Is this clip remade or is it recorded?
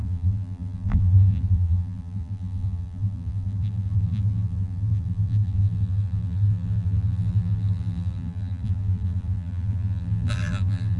remade